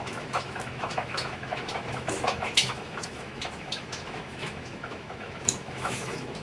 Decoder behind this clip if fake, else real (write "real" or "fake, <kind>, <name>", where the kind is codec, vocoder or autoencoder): fake, autoencoder, DAC-VAE